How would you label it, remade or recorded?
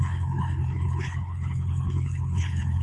remade